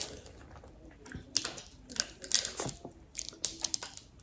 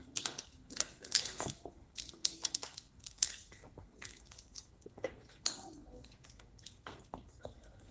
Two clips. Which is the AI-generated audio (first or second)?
second